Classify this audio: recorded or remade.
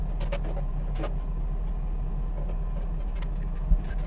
recorded